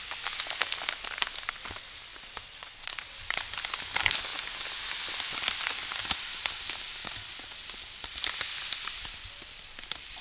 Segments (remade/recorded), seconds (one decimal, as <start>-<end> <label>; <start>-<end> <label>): 0.0-2.1 recorded; 2.1-3.5 remade; 3.5-7.0 recorded; 7.0-7.6 remade; 7.6-10.2 recorded